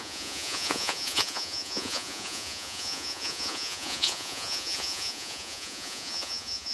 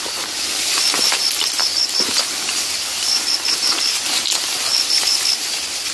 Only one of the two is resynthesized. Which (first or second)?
first